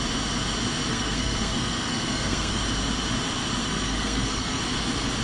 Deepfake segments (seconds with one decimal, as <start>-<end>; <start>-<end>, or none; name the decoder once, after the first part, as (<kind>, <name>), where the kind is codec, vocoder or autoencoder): 0.9-2.6 (codec, SNAC); 3.6-4.6